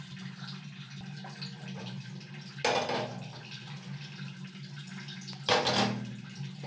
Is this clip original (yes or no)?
yes